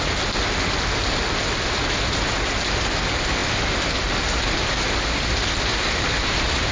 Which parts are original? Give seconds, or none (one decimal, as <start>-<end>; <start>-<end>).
0.0-5.7